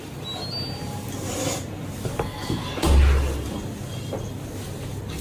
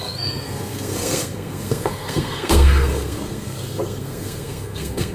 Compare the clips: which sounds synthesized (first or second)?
second